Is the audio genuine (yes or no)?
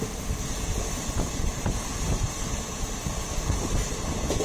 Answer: yes